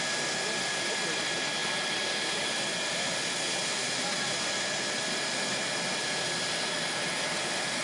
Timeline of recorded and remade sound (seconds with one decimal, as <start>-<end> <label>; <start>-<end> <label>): 0.0-7.8 recorded